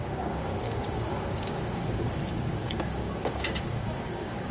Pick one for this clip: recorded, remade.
remade